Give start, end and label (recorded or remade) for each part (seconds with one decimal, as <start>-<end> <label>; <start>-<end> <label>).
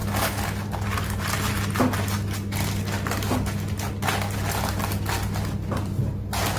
0.0-6.6 recorded